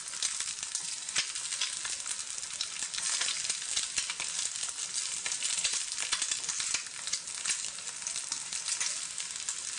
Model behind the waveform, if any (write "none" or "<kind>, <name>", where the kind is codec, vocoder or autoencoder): none